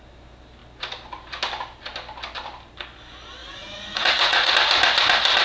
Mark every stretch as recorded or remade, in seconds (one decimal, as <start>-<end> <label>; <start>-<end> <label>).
0.0-3.4 recorded; 3.4-4.5 remade; 4.5-5.4 recorded